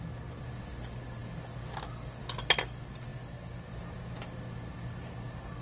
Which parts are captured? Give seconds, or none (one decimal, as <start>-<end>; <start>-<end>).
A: 0.0-5.6